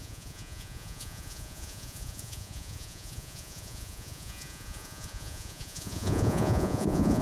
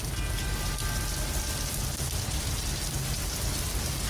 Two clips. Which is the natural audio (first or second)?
second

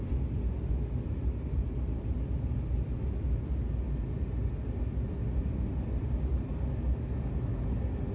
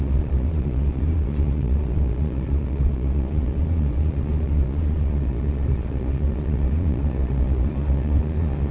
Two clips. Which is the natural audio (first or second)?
first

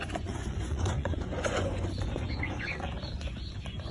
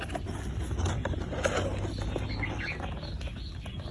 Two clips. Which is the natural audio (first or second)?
second